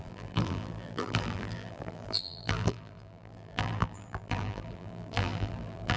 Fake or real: fake